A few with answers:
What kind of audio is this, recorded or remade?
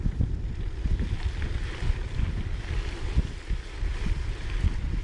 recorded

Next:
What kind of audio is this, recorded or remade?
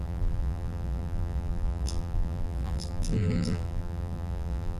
remade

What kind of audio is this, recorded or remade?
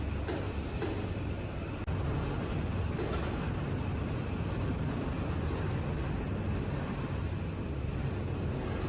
recorded